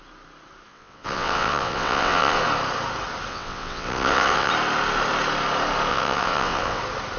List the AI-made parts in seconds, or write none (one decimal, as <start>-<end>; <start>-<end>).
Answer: 0.7-2.4; 3.3-4.5; 5.9-6.8